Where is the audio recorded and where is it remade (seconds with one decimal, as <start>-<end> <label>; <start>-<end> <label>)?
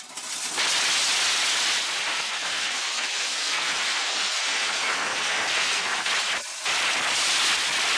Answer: 0.0-2.1 recorded; 2.1-6.1 remade; 6.1-8.0 recorded